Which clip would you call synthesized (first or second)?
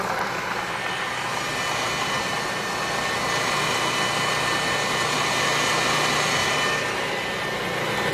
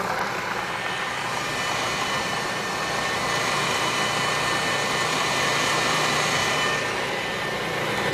second